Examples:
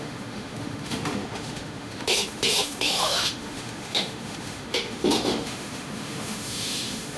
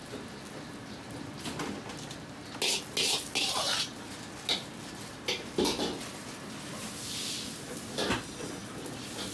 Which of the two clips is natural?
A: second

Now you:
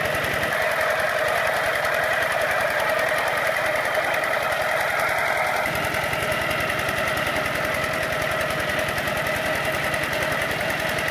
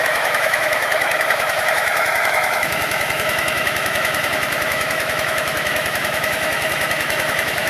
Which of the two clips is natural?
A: first